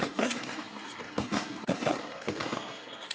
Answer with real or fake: fake